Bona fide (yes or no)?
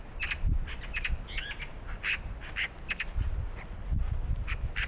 yes